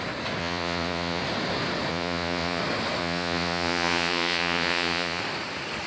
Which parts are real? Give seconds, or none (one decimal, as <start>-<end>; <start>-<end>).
0.0-0.4; 1.2-1.9; 2.6-3.0; 5.2-5.9